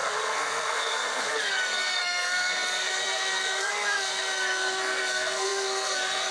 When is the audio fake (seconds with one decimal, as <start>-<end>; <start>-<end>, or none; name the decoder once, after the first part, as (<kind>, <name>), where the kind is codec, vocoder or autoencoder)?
0.0-6.3 (codec, SNAC)